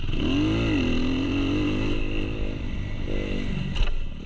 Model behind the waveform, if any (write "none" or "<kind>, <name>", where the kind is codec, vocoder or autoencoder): none